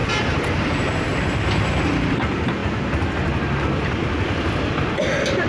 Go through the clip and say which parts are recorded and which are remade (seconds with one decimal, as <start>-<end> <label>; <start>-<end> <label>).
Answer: 0.0-5.5 recorded